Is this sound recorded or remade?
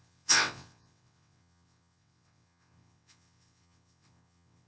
remade